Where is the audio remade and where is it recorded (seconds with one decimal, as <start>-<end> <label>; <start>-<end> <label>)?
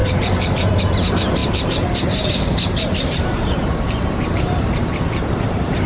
0.0-5.9 remade